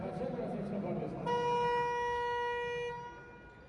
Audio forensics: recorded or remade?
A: recorded